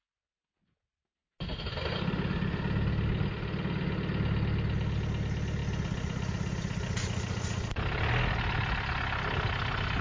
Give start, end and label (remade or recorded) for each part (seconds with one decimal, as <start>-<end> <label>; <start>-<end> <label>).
0.0-10.0 recorded